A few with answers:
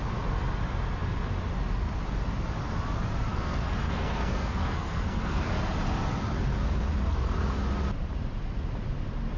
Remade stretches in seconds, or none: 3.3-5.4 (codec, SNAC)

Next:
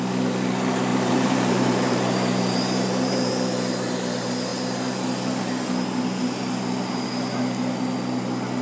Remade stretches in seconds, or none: 0.9-3.3 (vocoder, BigVGAN v2)

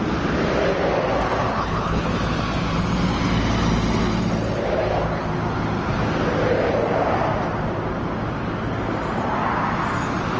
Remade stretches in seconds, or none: 1.5-2.2 (codec, HILCodec)